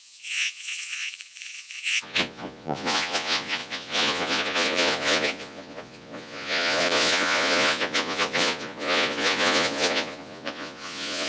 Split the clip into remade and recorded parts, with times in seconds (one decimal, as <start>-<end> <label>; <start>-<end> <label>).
0.0-11.3 remade